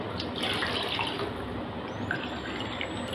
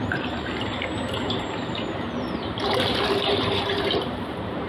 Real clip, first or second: first